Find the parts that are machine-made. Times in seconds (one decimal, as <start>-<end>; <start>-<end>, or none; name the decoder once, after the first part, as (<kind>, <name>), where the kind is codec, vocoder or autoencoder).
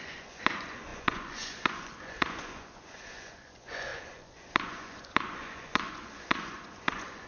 0.0-7.3 (vocoder, Vocos)